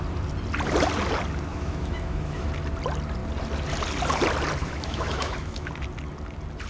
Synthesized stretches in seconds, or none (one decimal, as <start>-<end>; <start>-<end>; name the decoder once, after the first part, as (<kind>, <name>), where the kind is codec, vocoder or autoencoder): 1.5-2.5 (autoencoder, DAC-VAE); 4.6-5.7